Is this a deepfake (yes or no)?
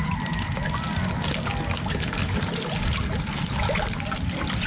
no